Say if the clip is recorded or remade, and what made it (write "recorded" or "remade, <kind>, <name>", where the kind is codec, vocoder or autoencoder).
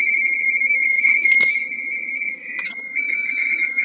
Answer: remade, vocoder, Vocos